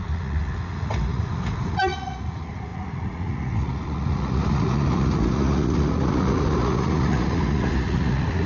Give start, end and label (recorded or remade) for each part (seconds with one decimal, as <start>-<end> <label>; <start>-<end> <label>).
0.0-8.5 remade